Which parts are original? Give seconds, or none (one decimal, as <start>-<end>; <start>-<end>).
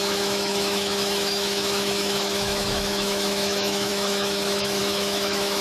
none